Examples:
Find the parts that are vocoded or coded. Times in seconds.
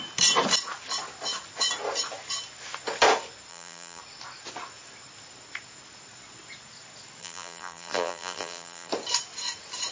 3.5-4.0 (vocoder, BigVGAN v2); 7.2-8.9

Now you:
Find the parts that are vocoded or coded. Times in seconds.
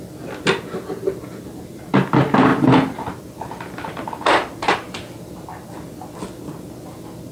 2.5-5.3 (vocoder, BigVGAN v2)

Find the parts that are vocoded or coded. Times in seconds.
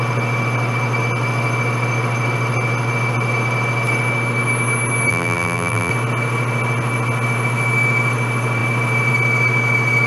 5.1-5.9 (vocoder, BigVGAN v2)